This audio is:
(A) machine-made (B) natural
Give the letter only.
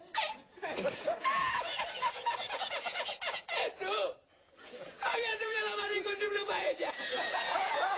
A